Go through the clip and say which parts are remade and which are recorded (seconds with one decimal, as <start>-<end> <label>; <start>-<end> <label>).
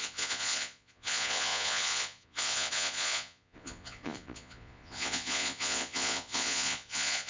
0.0-7.3 remade